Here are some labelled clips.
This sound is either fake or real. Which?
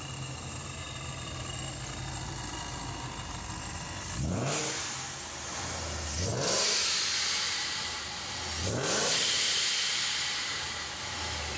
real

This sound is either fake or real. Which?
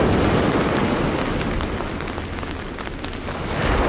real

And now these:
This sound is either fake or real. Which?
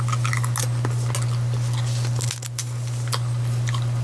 real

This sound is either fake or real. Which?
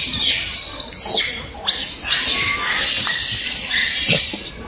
real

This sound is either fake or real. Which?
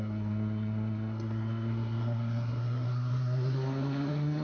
fake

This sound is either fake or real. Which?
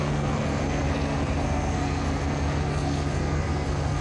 fake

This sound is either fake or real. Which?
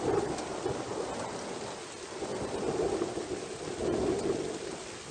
real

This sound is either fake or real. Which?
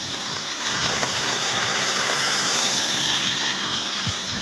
fake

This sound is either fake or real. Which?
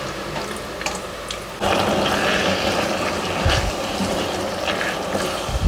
real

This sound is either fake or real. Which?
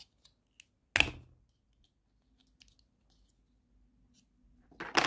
real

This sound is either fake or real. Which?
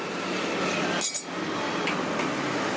real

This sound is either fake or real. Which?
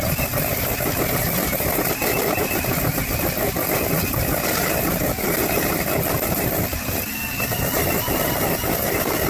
real